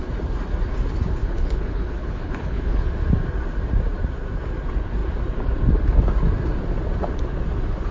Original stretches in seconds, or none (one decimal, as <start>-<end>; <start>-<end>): 0.0-1.2; 2.9-7.9